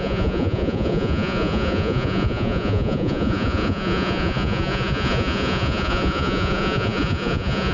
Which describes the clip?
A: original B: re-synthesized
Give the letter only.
B